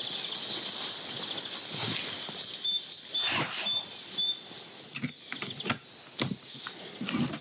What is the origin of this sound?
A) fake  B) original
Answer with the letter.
B